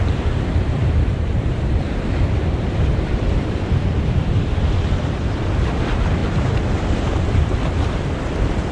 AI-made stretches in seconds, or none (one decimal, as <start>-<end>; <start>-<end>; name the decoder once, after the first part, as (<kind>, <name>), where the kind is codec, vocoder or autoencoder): 0.0-6.2 (vocoder, BigVGAN v2); 7.1-8.7